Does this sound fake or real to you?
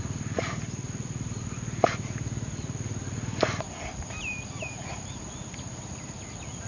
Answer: fake